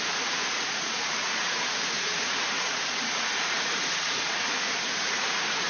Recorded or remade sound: remade